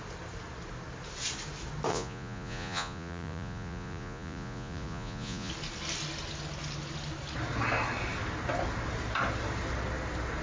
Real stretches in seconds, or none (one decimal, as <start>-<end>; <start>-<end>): 0.0-1.9; 5.5-10.4